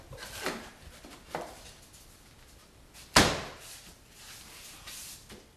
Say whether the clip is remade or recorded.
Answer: recorded